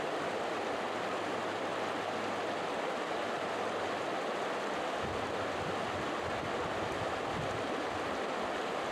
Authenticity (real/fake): real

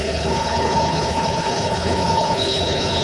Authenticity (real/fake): fake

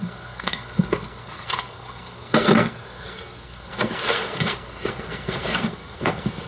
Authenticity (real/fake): fake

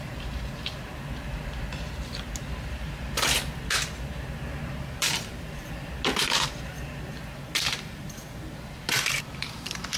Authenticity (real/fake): fake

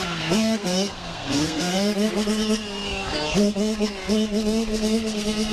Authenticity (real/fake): fake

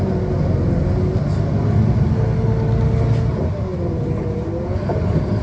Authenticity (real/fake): real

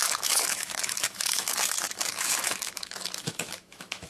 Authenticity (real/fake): fake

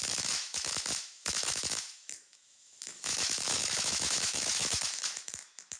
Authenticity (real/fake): fake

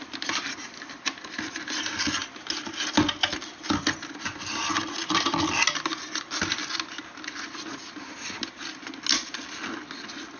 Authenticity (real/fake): real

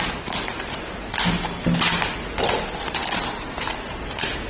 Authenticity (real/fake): real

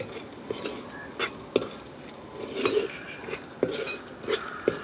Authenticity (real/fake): real